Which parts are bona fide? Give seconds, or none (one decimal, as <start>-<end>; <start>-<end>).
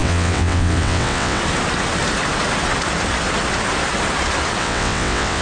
1.4-4.6